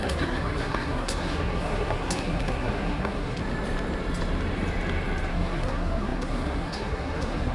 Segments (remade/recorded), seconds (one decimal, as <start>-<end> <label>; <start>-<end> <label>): 0.0-3.4 remade; 3.4-5.3 recorded; 5.3-7.5 remade